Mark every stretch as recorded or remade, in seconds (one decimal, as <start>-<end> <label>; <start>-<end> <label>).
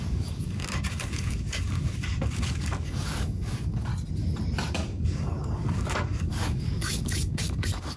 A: 0.0-3.9 remade; 3.9-4.7 recorded; 4.7-8.0 remade